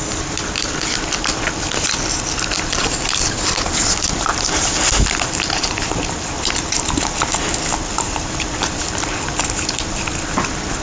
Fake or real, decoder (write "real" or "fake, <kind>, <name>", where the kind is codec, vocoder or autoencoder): real